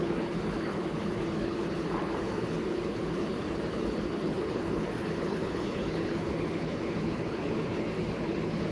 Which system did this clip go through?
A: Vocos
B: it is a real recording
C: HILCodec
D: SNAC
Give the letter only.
C